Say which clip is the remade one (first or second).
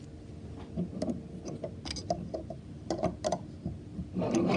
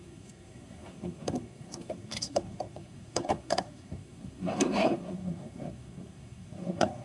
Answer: second